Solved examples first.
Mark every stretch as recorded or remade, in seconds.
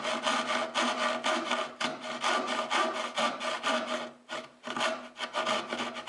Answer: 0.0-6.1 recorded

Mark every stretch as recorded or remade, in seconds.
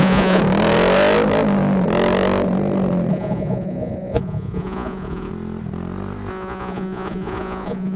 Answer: 0.0-0.4 remade; 0.4-3.1 recorded; 3.1-5.3 remade; 5.3-6.3 recorded; 6.3-8.0 remade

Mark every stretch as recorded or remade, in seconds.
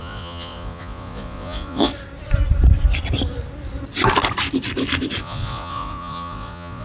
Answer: 0.0-1.9 remade; 1.9-5.2 recorded; 5.2-6.8 remade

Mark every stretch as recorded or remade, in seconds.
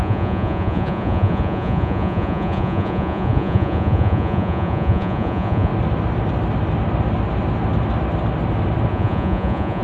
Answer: 0.0-5.7 remade; 5.7-8.9 recorded; 8.9-9.8 remade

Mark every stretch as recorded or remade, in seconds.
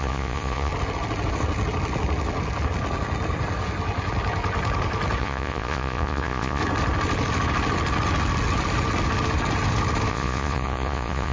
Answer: 0.0-0.7 remade; 0.7-5.2 recorded; 5.2-6.6 remade; 6.6-10.1 recorded; 10.1-11.3 remade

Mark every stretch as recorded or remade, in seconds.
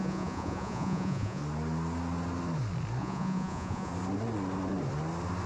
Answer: 0.0-1.4 remade; 1.4-3.0 recorded; 3.0-3.9 remade; 3.9-5.5 recorded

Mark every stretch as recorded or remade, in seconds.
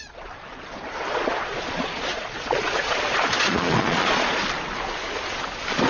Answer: 0.0-4.4 remade; 4.4-5.9 recorded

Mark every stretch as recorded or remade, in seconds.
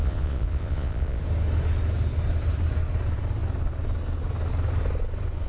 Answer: 0.0-1.2 remade; 1.2-5.5 recorded